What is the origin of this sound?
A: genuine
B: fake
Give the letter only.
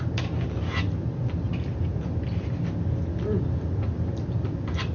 A